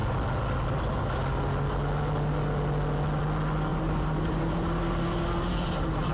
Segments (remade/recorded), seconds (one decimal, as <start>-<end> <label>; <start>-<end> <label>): 0.0-3.7 recorded; 3.7-6.1 remade